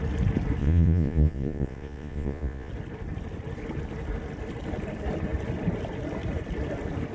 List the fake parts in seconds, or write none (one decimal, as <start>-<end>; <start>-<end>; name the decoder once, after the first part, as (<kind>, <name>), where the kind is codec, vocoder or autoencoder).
0.6-2.7 (vocoder, Vocos)